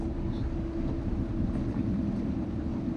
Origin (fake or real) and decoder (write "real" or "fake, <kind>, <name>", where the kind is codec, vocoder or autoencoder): real